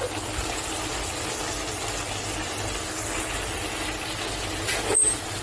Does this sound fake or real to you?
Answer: real